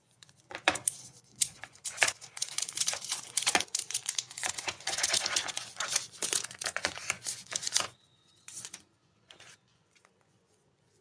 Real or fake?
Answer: fake